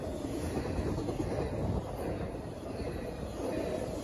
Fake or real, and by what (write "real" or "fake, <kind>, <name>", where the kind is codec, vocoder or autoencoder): real